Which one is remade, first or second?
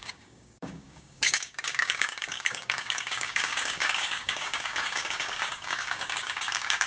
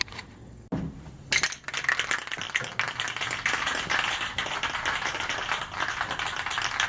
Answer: first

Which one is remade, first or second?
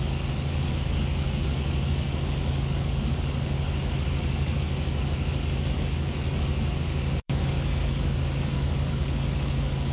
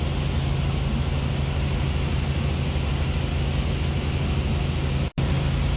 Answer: first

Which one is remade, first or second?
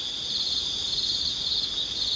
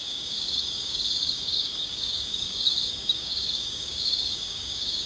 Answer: second